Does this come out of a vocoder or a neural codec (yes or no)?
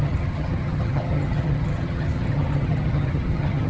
yes